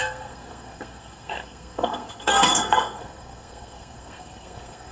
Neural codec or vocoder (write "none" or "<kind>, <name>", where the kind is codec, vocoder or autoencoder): codec, SNAC